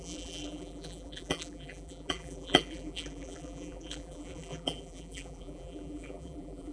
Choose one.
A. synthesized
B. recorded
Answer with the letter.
A